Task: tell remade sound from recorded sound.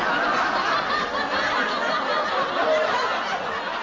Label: recorded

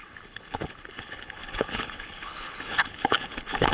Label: remade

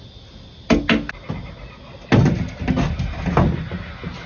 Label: recorded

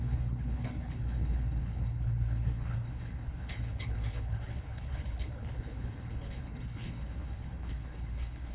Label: remade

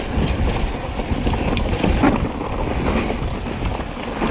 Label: recorded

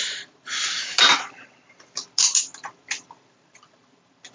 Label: recorded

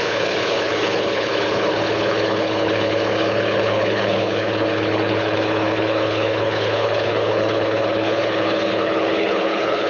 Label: remade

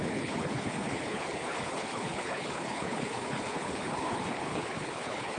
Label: remade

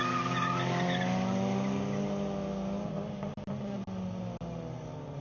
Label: recorded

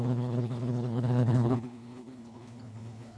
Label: remade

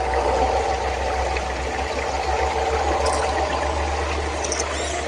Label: recorded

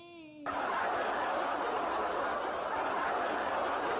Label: recorded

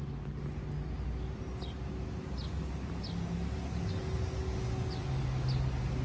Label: recorded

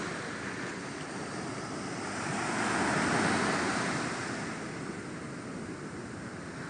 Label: recorded